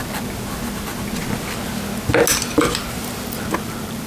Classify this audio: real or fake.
real